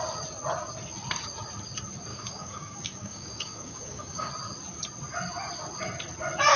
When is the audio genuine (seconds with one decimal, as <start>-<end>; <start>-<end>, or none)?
0.0-2.1; 4.3-6.6